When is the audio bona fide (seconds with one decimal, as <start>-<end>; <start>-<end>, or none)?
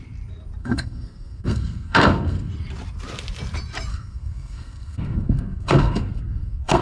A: 0.0-0.6; 2.5-3.9